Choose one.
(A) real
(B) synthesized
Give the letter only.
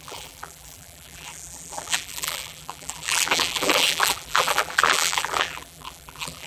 B